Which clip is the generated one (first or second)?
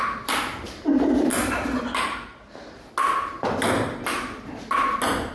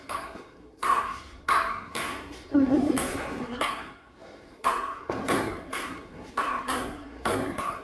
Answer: second